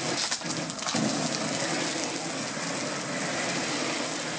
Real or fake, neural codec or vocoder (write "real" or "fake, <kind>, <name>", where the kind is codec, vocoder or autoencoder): real